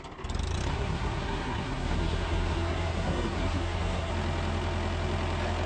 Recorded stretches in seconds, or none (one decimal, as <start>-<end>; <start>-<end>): 0.0-0.7; 4.1-5.7